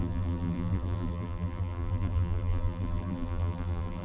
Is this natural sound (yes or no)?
no